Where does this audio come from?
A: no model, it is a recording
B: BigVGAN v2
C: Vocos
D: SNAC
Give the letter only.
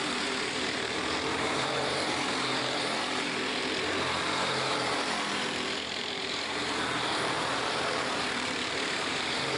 B